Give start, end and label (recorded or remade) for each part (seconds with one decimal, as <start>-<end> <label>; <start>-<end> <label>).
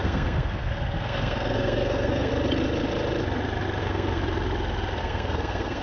0.0-2.3 remade; 2.3-3.8 recorded; 3.8-4.2 remade; 4.2-5.0 recorded; 5.0-5.8 remade